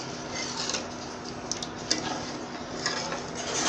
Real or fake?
real